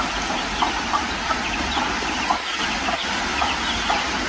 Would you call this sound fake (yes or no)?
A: no